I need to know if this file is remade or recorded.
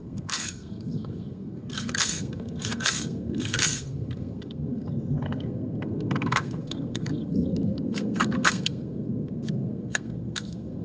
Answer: remade